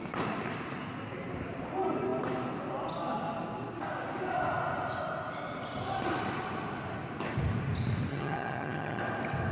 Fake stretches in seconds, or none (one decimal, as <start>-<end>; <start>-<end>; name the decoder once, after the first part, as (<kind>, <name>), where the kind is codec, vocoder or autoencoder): 8.1-9.0 (vocoder, HiFi-GAN)